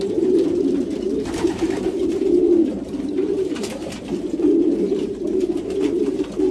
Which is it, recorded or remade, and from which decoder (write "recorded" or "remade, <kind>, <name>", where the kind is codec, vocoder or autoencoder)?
remade, vocoder, BigVGAN v2